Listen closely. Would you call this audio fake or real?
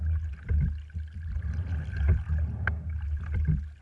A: real